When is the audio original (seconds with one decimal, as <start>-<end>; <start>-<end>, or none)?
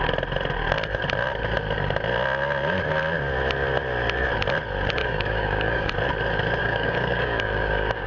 0.0-5.0; 5.9-6.6